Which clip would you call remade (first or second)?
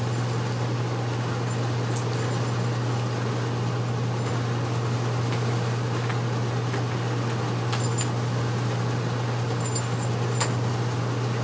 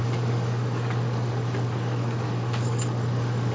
second